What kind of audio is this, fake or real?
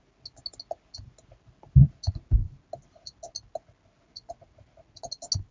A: real